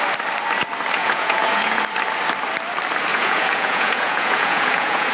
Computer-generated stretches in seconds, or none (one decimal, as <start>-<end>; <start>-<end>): 1.0-1.8; 3.1-5.1